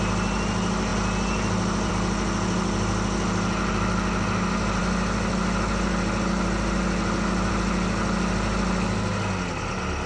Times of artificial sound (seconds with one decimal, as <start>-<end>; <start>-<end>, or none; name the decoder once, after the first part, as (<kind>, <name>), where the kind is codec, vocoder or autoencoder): none